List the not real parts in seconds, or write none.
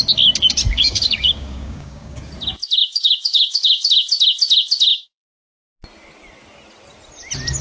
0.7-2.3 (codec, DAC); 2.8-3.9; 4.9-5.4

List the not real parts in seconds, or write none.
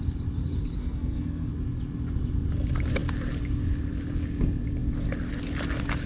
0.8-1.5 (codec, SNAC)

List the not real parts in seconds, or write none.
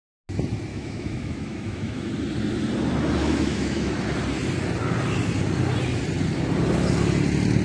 0.7-2.1 (autoencoder, DAC-VAE); 3.2-3.9